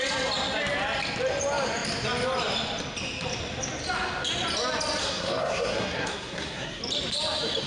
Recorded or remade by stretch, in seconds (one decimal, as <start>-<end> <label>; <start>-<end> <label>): 0.0-5.0 recorded; 5.0-6.8 remade; 6.8-7.7 recorded